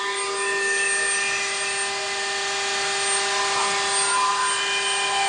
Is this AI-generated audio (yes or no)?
no